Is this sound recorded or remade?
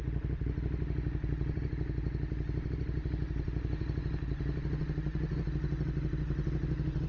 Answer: recorded